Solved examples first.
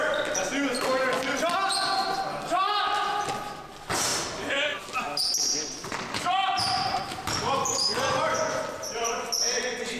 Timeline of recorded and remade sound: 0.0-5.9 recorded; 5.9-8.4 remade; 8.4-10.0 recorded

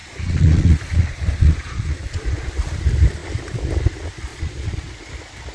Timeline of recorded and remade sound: 0.0-2.5 remade; 2.5-4.3 recorded; 4.3-4.9 remade; 4.9-5.5 recorded

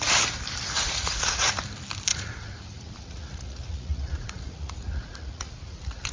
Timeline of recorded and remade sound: 0.0-0.8 recorded; 0.8-1.6 remade; 1.6-2.1 recorded; 2.1-6.1 remade

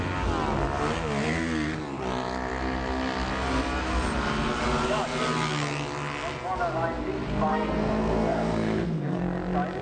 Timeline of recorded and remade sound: 0.0-7.5 recorded; 7.5-9.2 remade; 9.2-9.8 recorded

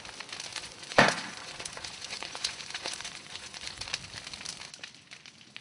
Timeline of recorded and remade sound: 0.0-0.5 recorded; 0.5-3.9 remade; 3.9-5.6 recorded

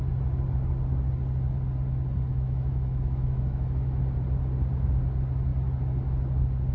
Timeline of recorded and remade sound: 0.0-2.3 recorded; 2.3-4.0 remade; 4.0-6.7 recorded

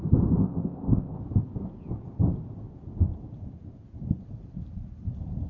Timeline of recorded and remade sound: 0.0-0.4 recorded; 0.4-1.2 remade; 1.2-5.5 recorded

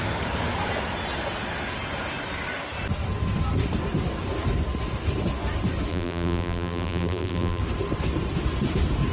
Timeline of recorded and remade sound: 0.0-5.9 recorded; 5.9-7.6 remade; 7.6-9.1 recorded